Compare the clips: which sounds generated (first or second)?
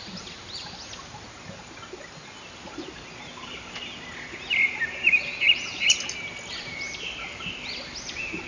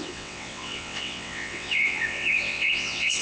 second